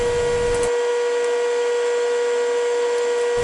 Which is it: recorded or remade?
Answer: recorded